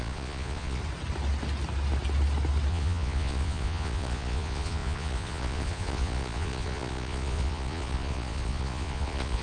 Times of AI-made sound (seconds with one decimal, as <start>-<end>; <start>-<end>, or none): 0.0-0.8; 2.7-9.4